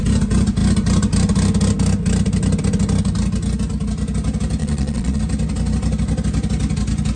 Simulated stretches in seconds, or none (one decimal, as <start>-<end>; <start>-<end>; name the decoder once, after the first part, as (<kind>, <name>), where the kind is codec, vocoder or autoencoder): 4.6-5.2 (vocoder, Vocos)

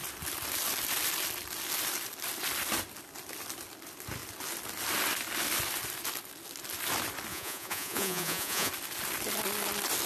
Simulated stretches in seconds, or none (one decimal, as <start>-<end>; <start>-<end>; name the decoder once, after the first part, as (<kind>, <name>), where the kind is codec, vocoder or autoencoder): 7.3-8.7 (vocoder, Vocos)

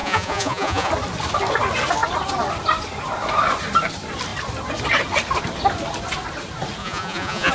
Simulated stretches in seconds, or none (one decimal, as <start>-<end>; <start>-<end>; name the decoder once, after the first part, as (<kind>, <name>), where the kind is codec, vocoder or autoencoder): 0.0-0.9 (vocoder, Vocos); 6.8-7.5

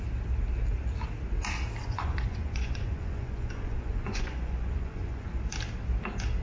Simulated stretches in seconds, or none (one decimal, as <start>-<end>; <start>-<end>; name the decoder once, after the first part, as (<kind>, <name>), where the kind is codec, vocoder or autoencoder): 1.8-5.3 (vocoder, Vocos)

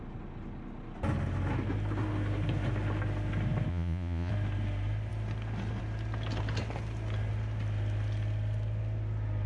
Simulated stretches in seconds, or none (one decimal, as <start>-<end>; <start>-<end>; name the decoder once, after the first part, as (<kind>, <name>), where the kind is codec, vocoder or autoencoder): 3.7-4.3 (vocoder, Vocos)

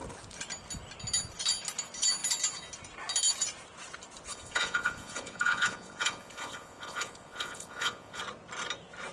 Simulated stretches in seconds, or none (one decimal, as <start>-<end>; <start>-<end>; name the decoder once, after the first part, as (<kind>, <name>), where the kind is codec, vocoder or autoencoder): 4.3-8.2 (vocoder, Vocos)

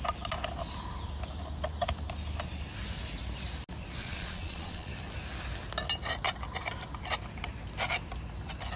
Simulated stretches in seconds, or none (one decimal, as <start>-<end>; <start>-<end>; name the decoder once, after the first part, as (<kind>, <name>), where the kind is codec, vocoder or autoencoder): 4.0-4.9 (vocoder, Vocos)